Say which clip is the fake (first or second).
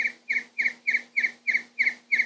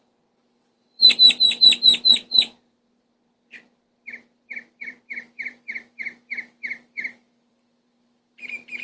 second